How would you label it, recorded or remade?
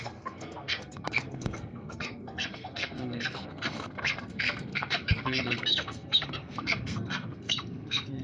remade